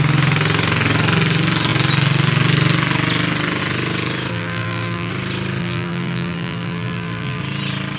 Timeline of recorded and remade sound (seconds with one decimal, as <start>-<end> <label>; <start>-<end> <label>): 0.0-4.3 recorded; 4.3-5.1 remade; 5.1-5.6 recorded; 5.6-7.4 remade; 7.4-8.0 recorded